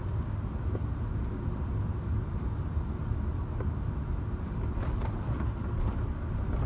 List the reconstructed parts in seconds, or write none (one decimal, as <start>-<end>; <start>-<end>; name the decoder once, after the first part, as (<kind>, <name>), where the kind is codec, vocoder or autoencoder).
1.1-2.1 (vocoder, BigVGAN v2)